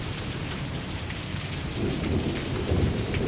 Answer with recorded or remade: remade